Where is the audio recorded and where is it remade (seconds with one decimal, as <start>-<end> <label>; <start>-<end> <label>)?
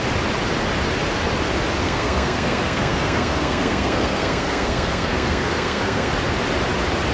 0.0-1.8 recorded; 1.8-6.1 remade; 6.1-7.1 recorded